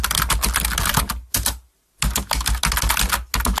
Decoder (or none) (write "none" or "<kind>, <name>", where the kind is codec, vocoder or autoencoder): none